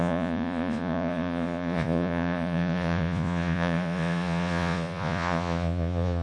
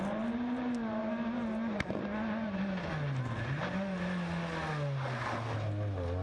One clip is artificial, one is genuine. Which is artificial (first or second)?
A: first